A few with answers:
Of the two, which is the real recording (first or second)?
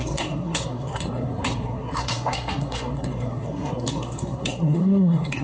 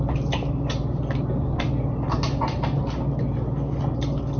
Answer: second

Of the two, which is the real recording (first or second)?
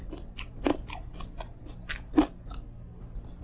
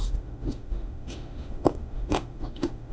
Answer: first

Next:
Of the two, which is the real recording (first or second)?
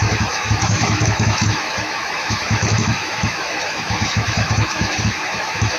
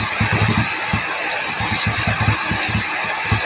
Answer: second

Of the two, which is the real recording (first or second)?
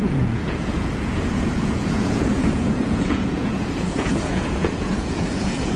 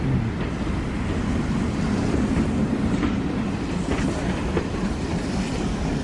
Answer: second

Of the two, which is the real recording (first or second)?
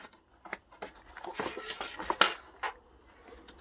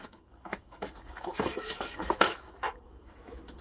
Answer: first